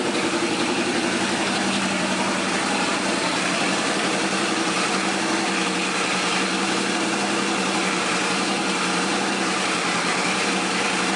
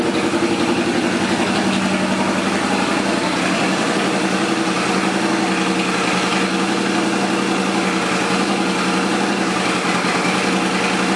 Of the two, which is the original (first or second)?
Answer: second